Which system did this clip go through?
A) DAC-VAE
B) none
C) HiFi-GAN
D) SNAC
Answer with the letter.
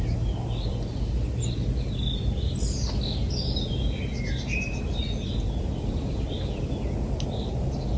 B